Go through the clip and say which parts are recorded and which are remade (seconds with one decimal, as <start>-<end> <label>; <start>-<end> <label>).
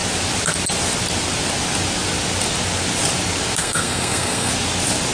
0.0-3.6 recorded; 3.6-4.5 remade; 4.5-5.1 recorded